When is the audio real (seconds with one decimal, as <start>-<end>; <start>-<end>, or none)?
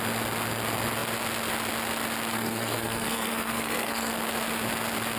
0.0-2.3; 4.1-5.2